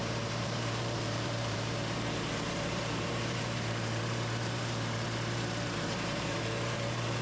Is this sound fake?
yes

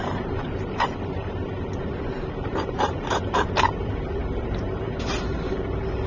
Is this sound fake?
yes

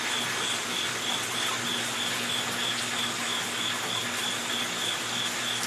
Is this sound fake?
no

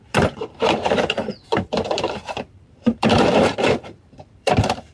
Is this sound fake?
yes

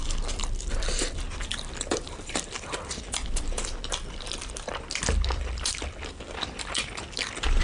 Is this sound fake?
yes